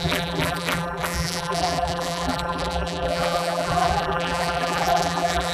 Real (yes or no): no